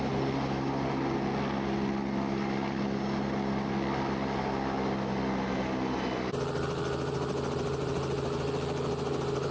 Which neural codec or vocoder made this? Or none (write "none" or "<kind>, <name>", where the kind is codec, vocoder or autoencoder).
none